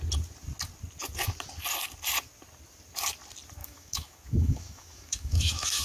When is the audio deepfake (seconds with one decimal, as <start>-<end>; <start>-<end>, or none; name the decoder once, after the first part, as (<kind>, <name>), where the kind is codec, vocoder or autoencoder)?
3.6-5.8 (autoencoder, DAC-VAE)